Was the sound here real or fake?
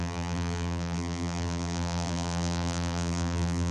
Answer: fake